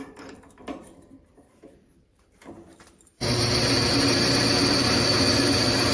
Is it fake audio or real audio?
fake